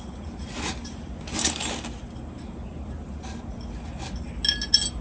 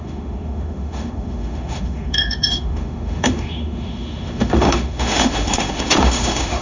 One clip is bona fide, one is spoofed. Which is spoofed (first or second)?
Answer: second